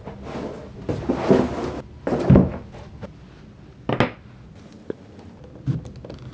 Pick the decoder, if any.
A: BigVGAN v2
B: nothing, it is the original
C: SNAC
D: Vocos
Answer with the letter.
B